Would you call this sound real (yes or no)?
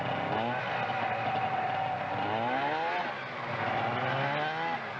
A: yes